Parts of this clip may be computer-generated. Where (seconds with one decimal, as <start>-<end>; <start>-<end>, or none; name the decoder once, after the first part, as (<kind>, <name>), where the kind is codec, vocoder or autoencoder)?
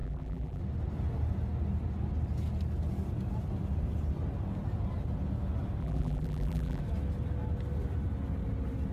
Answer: 0.0-0.6 (vocoder, BigVGAN v2); 5.8-6.8